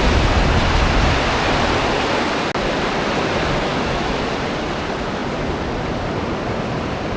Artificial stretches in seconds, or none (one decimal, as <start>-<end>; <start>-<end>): 3.7-4.2